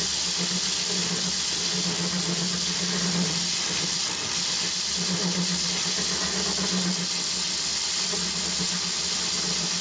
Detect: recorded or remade recorded